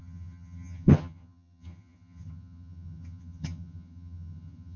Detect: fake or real fake